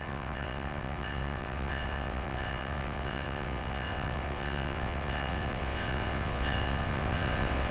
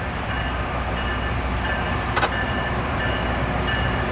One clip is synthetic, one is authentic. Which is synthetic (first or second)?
first